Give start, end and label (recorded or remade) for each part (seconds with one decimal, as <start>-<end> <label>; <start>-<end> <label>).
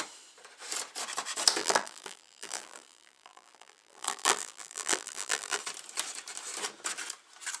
0.0-1.6 recorded; 1.6-5.6 remade; 5.6-7.6 recorded